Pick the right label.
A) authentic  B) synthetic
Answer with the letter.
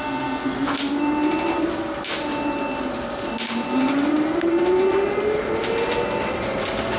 A